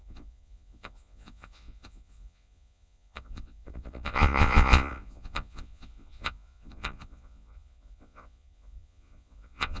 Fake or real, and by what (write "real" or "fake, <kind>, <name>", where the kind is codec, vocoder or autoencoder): fake, vocoder, Vocos